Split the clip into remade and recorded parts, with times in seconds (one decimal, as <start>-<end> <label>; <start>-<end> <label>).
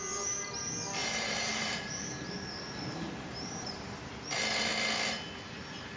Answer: 0.0-1.0 recorded; 1.0-4.1 remade; 4.1-6.0 recorded